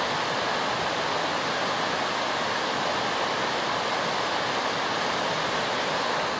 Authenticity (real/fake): real